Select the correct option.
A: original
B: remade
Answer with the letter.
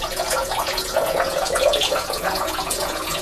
B